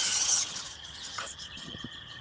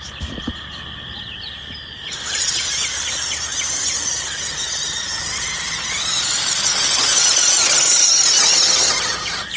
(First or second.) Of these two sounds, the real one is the second